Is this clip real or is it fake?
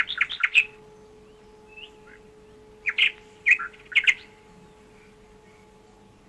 real